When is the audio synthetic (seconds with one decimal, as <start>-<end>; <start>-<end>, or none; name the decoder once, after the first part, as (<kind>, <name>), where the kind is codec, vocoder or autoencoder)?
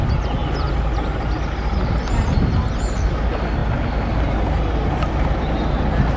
none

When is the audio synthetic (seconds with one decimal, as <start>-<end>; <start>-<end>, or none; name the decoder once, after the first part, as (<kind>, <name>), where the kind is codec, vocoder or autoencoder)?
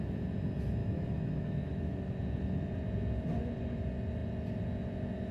0.8-2.2 (autoencoder, DAC-VAE)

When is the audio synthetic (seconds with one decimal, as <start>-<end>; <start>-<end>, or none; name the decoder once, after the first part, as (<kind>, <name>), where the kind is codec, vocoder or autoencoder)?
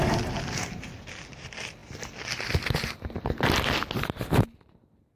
none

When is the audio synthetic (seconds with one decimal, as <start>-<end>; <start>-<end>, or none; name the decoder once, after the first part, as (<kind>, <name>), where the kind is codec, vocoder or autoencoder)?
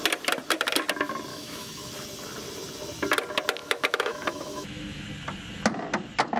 1.3-1.9 (autoencoder, DAC-VAE); 3.6-5.1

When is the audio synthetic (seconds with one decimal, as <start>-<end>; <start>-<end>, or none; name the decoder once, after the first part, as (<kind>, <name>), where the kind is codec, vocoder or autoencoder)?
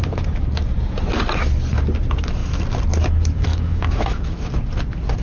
3.5-4.5 (autoencoder, DAC-VAE)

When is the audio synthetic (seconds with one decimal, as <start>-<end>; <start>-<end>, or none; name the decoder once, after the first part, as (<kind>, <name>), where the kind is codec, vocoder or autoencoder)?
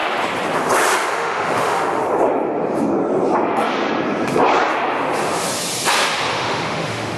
1.1-2.0 (autoencoder, DAC-VAE); 6.3-7.2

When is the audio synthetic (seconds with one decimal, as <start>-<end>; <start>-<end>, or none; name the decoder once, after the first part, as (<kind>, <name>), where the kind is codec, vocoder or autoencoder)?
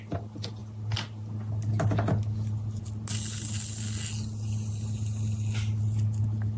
none